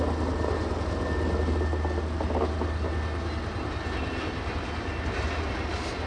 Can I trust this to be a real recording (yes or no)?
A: yes